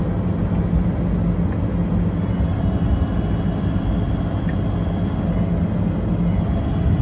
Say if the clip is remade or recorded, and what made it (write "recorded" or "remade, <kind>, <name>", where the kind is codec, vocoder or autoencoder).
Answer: recorded